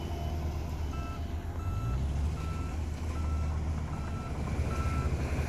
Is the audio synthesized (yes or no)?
no